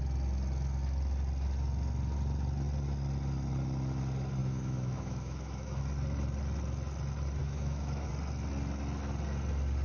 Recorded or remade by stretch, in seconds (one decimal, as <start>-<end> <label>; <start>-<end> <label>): 0.0-4.4 recorded; 4.4-5.8 remade; 5.8-7.4 recorded; 7.4-8.1 remade; 8.1-9.8 recorded

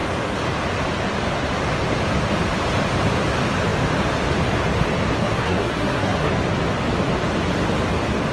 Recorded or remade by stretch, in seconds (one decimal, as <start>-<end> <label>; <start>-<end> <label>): 0.0-5.2 recorded; 5.2-6.3 remade; 6.3-8.3 recorded

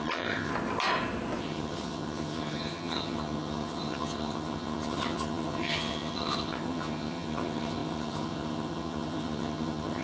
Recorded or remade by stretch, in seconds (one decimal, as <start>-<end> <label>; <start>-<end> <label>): 0.0-0.5 remade; 0.5-1.4 recorded; 1.4-10.0 remade

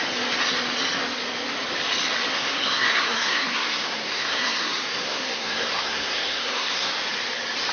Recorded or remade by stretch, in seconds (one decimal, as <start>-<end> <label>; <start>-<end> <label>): 0.0-2.3 recorded; 2.3-6.9 remade; 6.9-7.7 recorded